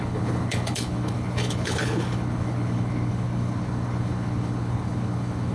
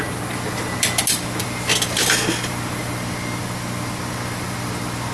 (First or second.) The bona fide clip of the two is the second